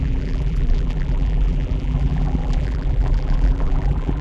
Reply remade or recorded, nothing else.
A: remade